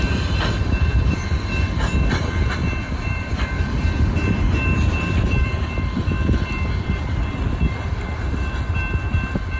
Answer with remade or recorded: remade